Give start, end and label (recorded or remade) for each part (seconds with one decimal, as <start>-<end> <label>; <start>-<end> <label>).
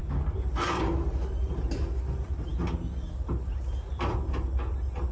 0.0-5.1 recorded